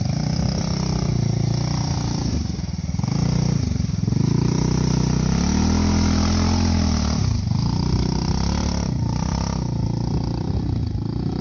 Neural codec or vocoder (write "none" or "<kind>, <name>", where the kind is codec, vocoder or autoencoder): none